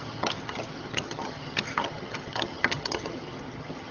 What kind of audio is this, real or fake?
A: fake